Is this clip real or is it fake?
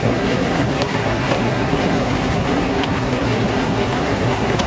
fake